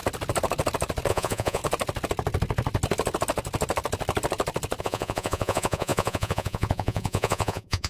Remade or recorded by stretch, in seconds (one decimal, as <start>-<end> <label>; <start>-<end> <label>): 0.0-1.1 recorded; 1.1-1.6 remade; 1.6-4.8 recorded; 4.8-7.9 remade